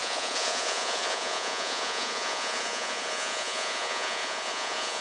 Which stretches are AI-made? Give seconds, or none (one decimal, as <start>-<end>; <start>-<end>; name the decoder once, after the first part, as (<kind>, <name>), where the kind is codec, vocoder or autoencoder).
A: 0.0-5.0 (vocoder, Vocos)